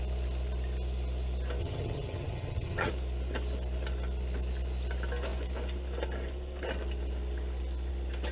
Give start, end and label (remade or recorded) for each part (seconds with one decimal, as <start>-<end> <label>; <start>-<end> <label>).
0.0-1.6 recorded; 1.6-2.9 remade; 2.9-8.3 recorded